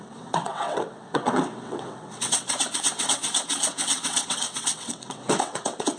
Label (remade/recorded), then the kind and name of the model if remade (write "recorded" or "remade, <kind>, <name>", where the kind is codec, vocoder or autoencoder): remade, vocoder, WaveNeXt